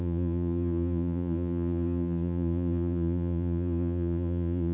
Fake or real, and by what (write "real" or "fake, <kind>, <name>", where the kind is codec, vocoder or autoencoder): fake, vocoder, Vocos